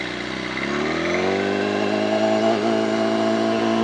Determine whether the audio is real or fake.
real